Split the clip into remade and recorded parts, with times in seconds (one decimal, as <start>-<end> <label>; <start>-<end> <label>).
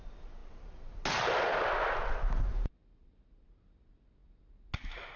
0.0-5.2 recorded